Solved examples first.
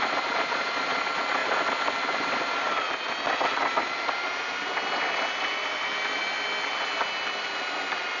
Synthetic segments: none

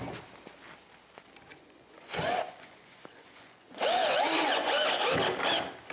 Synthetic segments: 1.5-5.0